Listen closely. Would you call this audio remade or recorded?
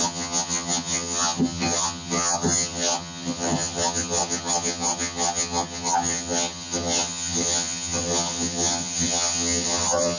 remade